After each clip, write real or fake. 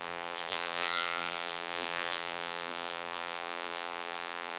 fake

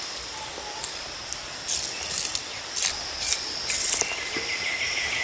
real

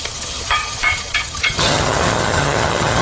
fake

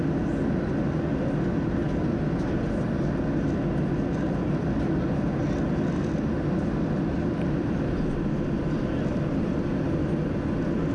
real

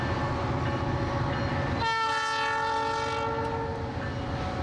real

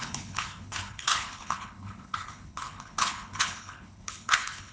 fake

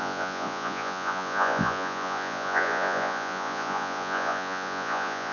fake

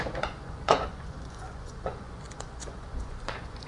fake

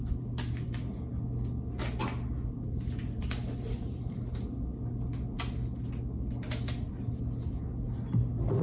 real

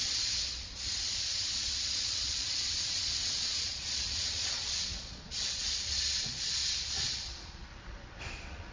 fake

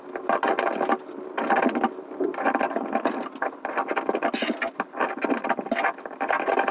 real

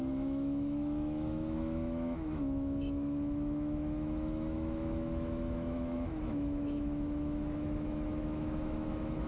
fake